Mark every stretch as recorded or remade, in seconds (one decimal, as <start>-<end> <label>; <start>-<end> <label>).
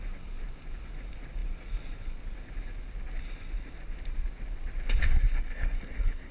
0.0-5.0 recorded; 5.0-6.3 remade